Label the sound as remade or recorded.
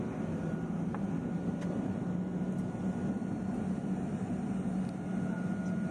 recorded